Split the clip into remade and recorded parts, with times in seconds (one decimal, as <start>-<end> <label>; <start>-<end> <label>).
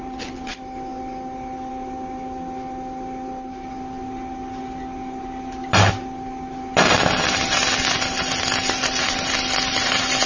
0.0-10.3 recorded